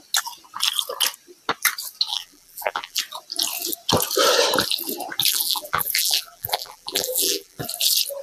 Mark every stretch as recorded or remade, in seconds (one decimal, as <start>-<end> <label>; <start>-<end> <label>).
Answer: 0.0-2.1 recorded; 2.1-3.0 remade; 3.0-5.3 recorded; 5.3-7.6 remade; 7.6-8.2 recorded